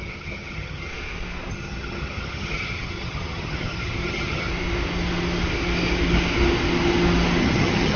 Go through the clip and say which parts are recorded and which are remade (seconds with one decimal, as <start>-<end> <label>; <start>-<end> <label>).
0.0-0.9 remade; 0.9-1.5 recorded; 1.5-4.5 remade; 4.5-7.4 recorded; 7.4-8.0 remade